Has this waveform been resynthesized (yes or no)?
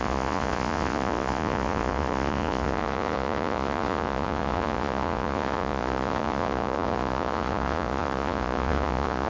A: yes